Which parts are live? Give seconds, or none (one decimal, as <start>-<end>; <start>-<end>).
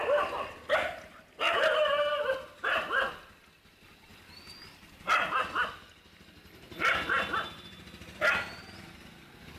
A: 0.0-9.6